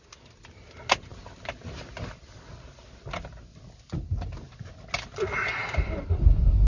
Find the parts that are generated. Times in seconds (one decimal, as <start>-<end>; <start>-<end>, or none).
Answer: none